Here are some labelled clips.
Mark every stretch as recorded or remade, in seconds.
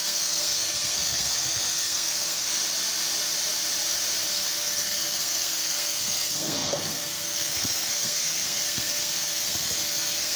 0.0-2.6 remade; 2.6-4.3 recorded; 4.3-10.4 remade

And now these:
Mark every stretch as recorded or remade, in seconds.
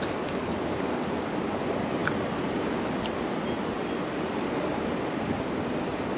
0.0-6.2 recorded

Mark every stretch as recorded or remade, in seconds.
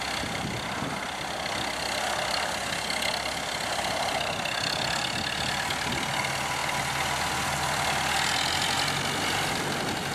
0.0-10.1 recorded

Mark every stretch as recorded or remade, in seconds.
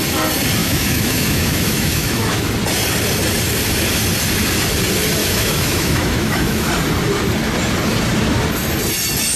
0.0-0.6 recorded; 0.6-2.5 remade; 2.5-5.2 recorded; 5.2-6.7 remade; 6.7-9.4 recorded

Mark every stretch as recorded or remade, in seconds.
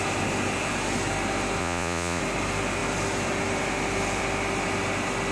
0.0-1.6 recorded; 1.6-2.2 remade; 2.2-5.3 recorded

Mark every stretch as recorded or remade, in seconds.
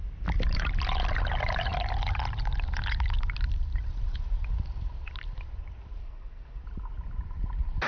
0.0-6.0 recorded; 6.0-6.6 remade; 6.6-7.9 recorded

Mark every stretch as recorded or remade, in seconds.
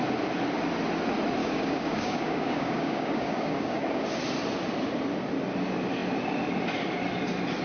0.0-1.4 recorded; 1.4-4.1 remade; 4.1-7.6 recorded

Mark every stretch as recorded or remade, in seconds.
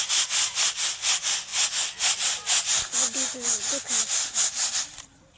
0.0-5.4 recorded